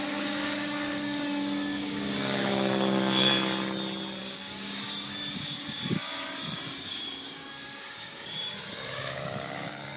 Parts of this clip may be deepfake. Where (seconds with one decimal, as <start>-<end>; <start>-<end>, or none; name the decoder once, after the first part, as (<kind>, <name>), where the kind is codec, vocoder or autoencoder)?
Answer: 0.0-3.3 (codec, DAC); 4.2-10.0